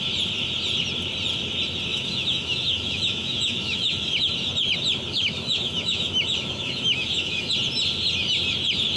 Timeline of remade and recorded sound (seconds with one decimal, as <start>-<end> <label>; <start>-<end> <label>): 0.0-1.9 recorded; 1.9-4.3 remade; 4.3-5.1 recorded; 5.1-7.5 remade; 7.5-9.0 recorded